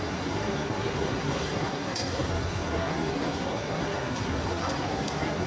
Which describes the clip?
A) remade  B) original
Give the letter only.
A